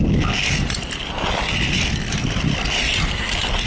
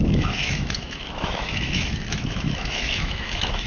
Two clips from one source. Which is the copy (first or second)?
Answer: second